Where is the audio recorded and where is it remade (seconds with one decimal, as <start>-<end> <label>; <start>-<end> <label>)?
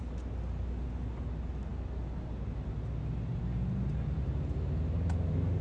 0.0-5.6 recorded